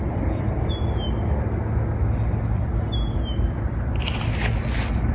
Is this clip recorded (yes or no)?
yes